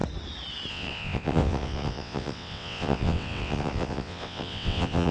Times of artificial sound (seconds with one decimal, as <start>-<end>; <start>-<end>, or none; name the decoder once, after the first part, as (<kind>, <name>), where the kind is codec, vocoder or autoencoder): 0.7-5.1 (vocoder, WaveNeXt)